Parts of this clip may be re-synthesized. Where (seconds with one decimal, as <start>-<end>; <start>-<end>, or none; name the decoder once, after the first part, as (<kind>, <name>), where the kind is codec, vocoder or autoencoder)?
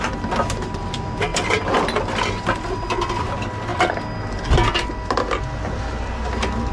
none